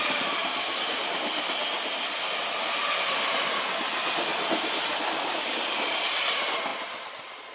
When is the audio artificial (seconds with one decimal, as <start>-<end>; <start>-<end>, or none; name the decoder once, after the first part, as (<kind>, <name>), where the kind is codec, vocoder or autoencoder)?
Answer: none